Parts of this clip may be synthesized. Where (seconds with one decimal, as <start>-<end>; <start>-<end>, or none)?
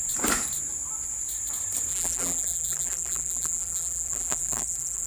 1.9-5.1